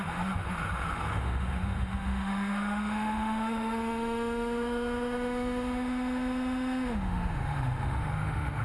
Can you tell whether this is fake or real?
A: fake